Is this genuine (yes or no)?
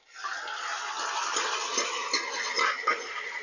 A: yes